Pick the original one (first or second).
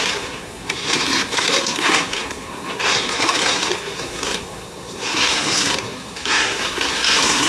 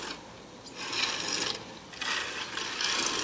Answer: second